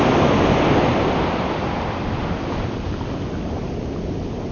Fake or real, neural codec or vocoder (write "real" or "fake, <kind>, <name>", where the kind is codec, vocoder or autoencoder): real